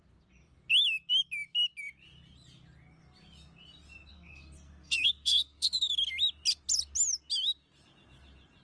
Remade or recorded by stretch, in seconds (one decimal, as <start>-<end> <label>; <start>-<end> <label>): 0.0-4.1 recorded; 4.1-5.9 remade; 5.9-8.6 recorded

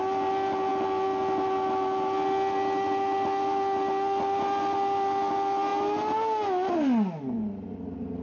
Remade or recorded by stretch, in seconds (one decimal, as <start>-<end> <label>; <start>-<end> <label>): 0.0-8.2 recorded

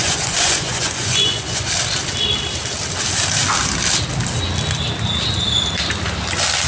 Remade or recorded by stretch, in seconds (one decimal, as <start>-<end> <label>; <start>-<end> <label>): 0.0-1.7 remade; 1.7-6.7 recorded